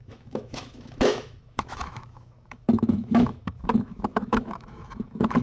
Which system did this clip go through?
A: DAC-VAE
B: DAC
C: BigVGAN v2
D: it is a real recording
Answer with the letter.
A